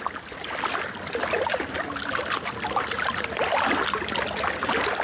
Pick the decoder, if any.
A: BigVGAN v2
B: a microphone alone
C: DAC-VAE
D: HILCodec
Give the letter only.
B